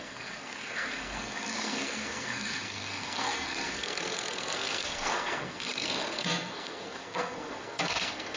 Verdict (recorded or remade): remade